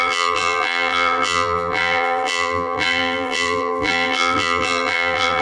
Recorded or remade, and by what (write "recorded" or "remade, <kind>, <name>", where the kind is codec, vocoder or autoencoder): remade, vocoder, BigVGAN v2